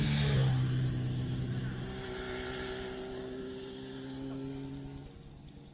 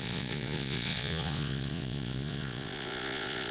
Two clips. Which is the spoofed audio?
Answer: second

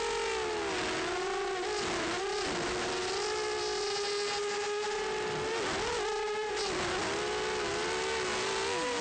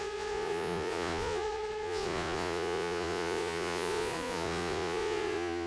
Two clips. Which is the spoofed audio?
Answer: second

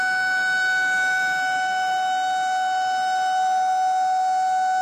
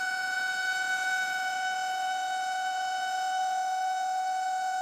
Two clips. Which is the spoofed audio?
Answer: second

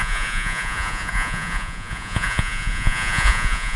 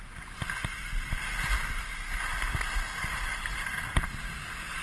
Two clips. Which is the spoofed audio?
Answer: first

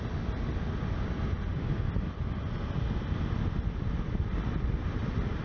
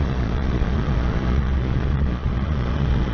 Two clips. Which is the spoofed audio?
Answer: second